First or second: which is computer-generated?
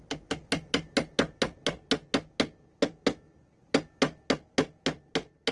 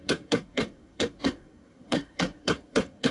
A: second